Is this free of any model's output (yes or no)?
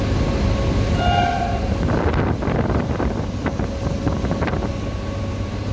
yes